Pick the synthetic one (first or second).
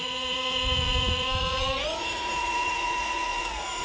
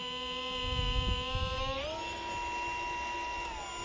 first